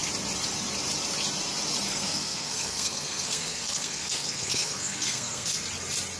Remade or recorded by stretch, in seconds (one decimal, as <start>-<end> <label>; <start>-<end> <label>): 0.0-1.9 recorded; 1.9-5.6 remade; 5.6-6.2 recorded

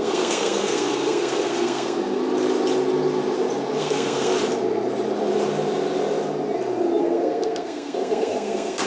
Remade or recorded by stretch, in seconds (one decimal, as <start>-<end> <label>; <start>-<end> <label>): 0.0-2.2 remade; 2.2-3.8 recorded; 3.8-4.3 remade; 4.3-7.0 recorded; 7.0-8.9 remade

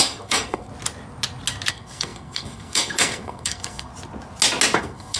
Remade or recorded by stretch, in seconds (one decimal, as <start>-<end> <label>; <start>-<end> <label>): 0.0-0.7 remade; 0.7-1.7 recorded; 1.7-3.9 remade; 3.9-4.8 recorded; 4.8-5.2 remade